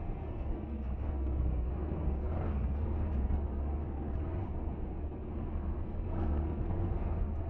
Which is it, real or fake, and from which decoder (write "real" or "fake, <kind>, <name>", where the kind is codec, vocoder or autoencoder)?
fake, codec, SNAC